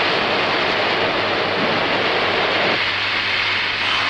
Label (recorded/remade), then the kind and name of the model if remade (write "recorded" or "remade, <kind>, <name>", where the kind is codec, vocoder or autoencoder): recorded